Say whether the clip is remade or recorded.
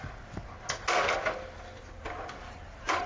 recorded